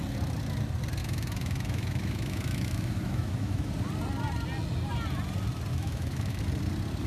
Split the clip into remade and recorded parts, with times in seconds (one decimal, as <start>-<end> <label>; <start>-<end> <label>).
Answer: 0.0-1.0 recorded; 1.0-3.7 remade; 3.7-5.7 recorded; 5.7-6.4 remade; 6.4-7.1 recorded